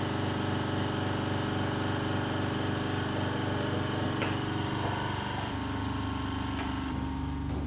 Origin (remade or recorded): recorded